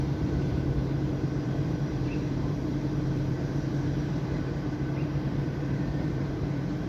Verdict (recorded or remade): remade